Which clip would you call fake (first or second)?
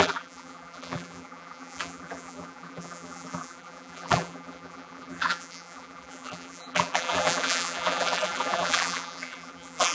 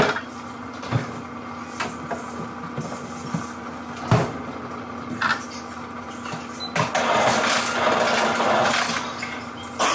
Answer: first